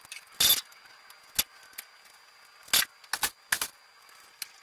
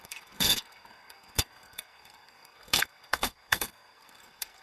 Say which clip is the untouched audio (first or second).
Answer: first